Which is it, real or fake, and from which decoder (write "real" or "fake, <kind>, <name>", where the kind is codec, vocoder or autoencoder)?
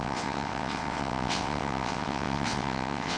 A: fake, vocoder, WaveNeXt